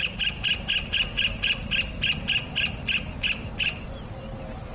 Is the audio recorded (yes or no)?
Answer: yes